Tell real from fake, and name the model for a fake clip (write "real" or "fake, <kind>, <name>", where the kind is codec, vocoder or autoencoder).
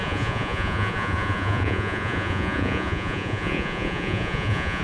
fake, vocoder, Vocos